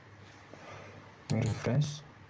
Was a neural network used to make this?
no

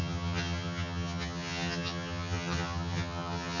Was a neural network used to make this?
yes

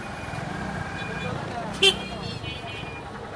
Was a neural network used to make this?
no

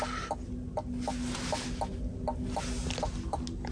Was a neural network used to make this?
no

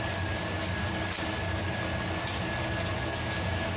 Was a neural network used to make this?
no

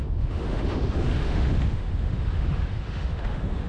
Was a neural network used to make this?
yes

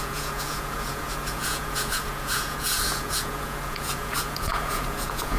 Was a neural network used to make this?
yes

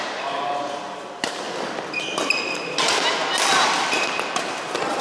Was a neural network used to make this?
no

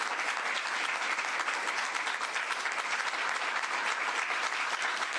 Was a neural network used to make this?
no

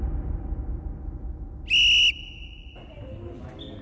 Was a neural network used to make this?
no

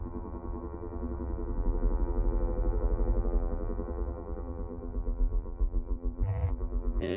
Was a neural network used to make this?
yes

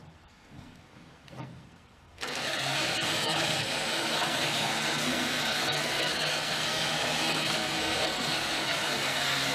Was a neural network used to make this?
yes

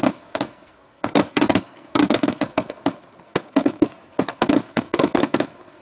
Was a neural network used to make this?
yes